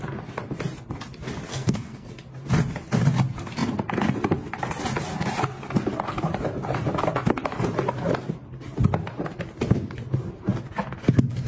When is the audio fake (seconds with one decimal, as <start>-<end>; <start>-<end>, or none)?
1.5-2.1